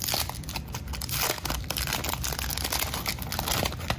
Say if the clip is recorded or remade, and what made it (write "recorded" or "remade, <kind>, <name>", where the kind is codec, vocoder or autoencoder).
recorded